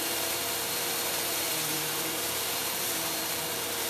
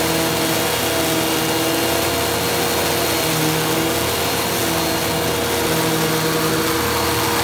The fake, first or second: first